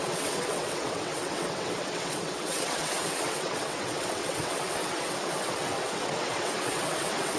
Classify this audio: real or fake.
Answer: fake